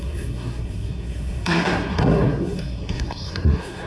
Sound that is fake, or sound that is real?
fake